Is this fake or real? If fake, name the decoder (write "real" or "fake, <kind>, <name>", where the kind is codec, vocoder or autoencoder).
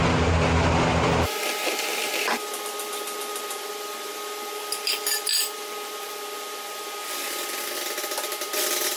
real